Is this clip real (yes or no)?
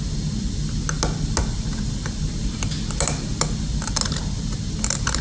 yes